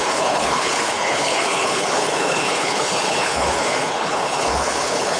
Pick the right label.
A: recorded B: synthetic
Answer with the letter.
B